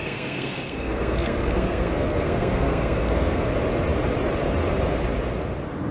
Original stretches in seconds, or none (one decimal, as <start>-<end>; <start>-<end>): 3.5-5.9